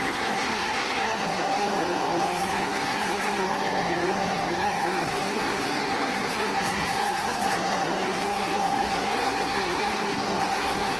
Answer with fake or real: fake